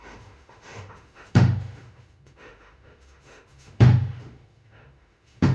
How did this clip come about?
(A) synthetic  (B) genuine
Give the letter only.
A